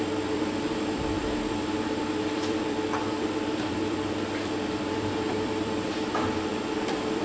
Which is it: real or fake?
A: fake